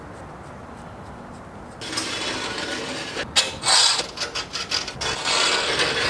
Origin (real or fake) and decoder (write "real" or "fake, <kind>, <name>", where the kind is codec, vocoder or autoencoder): real